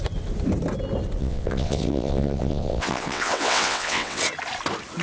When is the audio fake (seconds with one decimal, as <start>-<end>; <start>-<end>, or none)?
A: 1.2-4.2